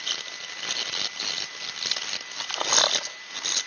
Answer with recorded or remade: recorded